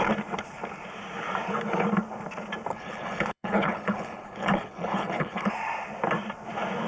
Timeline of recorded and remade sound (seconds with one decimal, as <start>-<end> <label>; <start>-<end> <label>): 0.0-2.7 recorded; 2.7-5.5 remade; 5.5-6.9 recorded